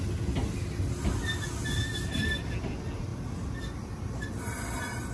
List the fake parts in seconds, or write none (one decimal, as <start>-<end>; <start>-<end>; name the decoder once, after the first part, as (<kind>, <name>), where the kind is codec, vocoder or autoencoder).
none